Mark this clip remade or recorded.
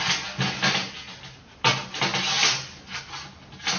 recorded